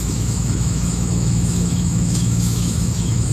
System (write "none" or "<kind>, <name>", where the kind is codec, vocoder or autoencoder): autoencoder, DAC-VAE